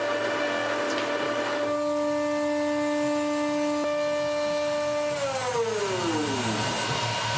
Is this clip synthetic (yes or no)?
no